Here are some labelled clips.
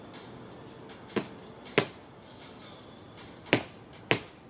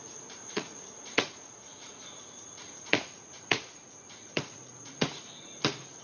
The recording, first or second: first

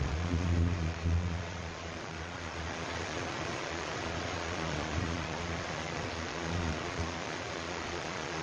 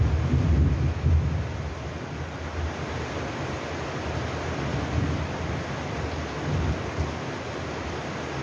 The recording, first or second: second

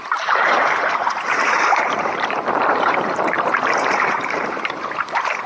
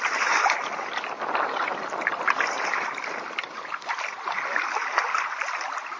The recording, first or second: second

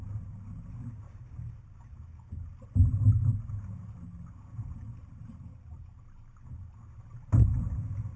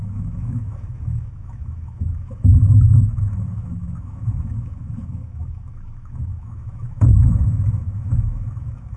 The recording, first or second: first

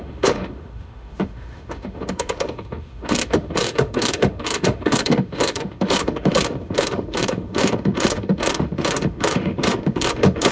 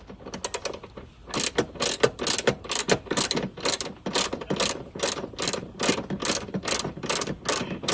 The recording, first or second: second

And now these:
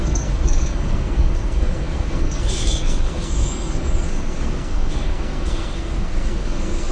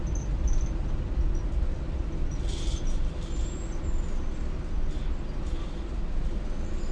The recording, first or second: second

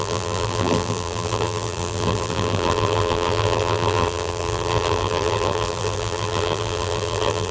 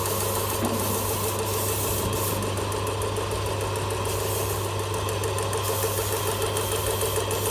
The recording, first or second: second